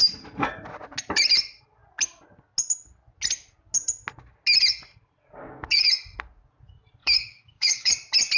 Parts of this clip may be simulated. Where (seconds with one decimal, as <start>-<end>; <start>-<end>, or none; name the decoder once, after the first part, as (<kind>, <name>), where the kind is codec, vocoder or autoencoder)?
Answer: 5.4-5.9 (codec, DAC); 7.0-7.9